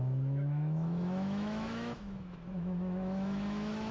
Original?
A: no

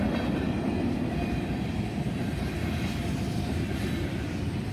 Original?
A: yes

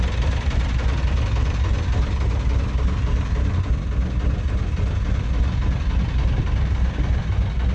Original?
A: yes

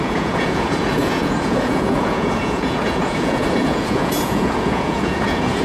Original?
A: no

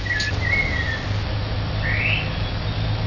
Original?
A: yes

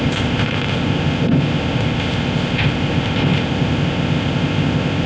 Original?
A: no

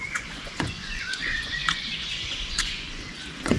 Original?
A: no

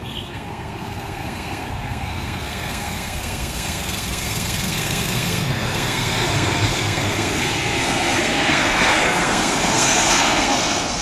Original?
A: no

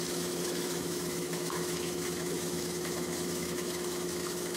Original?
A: no